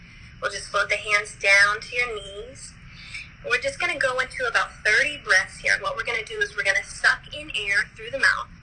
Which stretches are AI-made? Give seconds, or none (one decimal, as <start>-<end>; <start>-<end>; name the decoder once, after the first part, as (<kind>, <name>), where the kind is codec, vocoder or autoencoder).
5.5-7.0 (vocoder, BigVGAN v2)